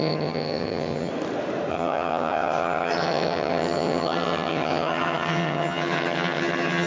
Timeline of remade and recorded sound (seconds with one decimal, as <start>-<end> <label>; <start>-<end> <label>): 0.0-1.1 remade; 1.1-1.7 recorded; 1.7-6.9 remade